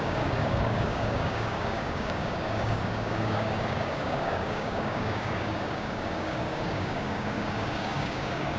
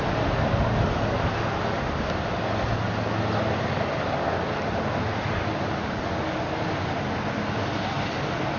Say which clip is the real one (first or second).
second